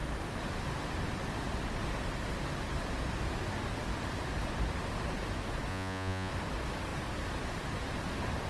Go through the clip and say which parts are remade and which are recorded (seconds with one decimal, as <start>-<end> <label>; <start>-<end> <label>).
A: 0.0-5.7 recorded; 5.7-6.3 remade; 6.3-8.5 recorded